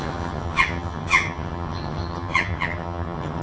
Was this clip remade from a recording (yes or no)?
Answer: yes